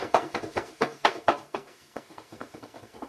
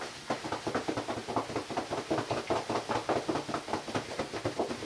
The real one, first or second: second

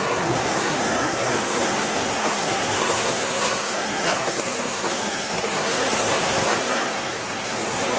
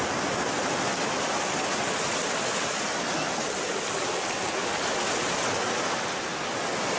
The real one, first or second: second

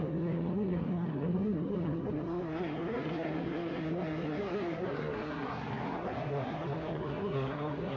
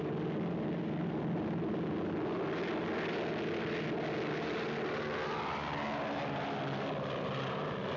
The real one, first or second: second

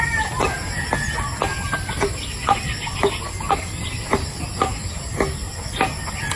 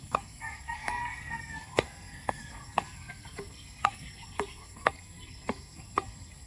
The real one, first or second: first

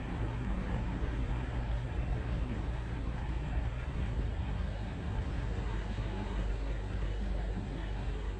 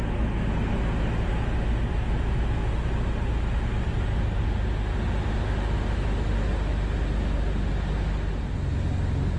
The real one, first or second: second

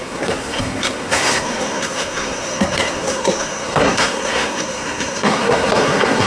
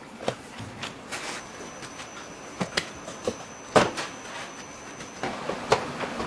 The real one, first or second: second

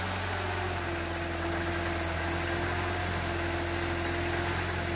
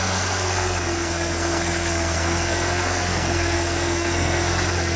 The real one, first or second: first